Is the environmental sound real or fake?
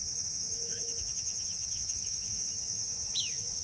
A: fake